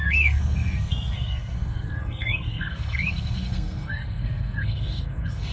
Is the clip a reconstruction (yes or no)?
yes